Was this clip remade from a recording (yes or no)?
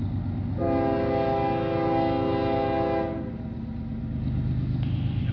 no